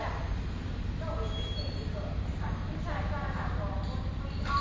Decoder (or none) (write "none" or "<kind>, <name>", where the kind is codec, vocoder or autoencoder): none